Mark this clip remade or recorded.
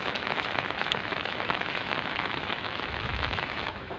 remade